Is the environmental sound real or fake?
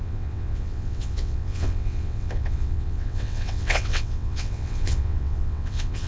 fake